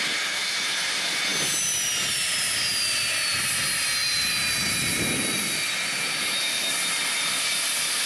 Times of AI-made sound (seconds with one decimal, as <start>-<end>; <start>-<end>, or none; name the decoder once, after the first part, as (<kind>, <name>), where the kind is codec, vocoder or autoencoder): none